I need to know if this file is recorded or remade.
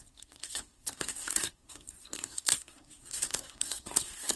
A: remade